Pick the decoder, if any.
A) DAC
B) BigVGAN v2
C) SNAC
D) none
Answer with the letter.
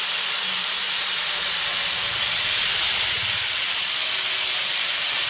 D